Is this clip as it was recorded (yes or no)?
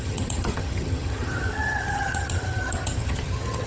no